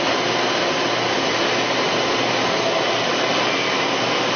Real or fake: real